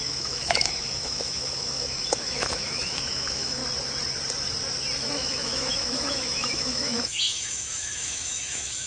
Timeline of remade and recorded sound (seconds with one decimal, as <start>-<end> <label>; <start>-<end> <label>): 0.0-3.6 remade; 3.6-5.1 recorded; 5.1-8.9 remade